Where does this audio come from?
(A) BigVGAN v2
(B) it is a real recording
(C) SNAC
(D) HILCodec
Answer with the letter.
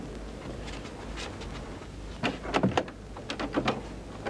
B